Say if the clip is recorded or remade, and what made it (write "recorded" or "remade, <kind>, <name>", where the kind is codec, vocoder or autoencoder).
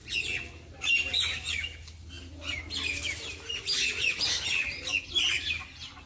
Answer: recorded